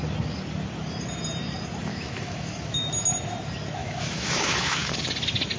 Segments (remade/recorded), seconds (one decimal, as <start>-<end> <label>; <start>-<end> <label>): 0.0-1.9 recorded; 1.9-2.9 remade; 2.9-3.8 recorded; 3.8-4.9 remade; 4.9-5.6 recorded